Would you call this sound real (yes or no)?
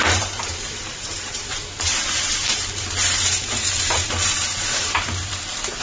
no